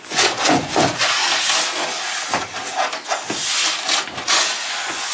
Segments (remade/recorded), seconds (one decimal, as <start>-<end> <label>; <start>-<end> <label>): 0.0-1.2 remade; 1.2-4.3 recorded; 4.3-5.1 remade